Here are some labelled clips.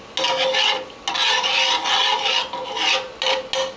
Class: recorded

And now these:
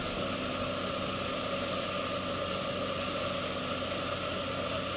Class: recorded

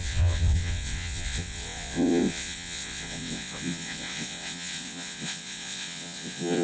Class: remade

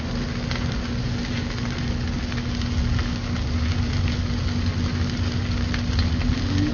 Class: recorded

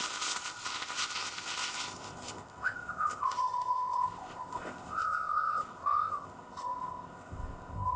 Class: remade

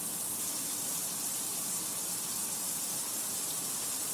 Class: remade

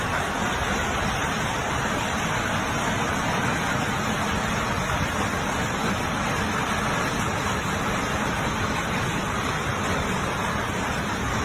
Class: recorded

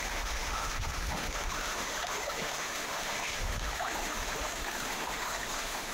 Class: remade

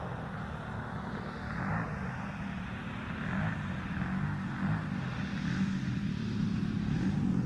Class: recorded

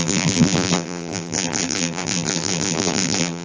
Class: remade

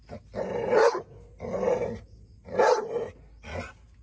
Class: recorded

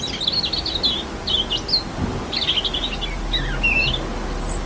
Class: recorded